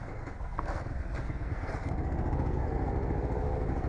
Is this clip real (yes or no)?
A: no